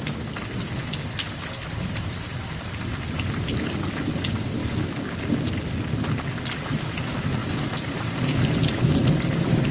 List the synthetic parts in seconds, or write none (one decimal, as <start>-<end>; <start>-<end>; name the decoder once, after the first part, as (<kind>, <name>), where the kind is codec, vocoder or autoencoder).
4.6-5.3 (codec, DAC)